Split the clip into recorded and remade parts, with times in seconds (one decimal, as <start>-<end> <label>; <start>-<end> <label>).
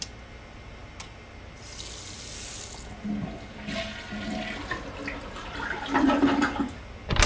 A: 0.0-7.3 recorded